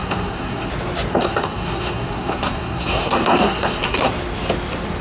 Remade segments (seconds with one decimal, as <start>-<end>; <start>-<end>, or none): 0.0-0.7; 1.1-4.1